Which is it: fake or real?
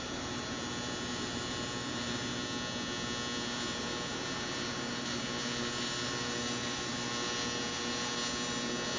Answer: real